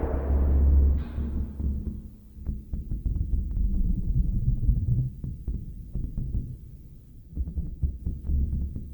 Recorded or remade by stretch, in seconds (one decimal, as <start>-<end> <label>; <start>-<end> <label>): 0.0-3.7 recorded; 3.7-5.1 remade; 5.1-7.1 recorded; 7.1-8.0 remade; 8.0-8.9 recorded